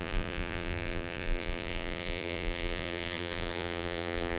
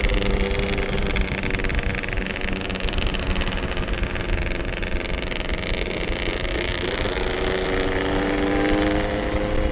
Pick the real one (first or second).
second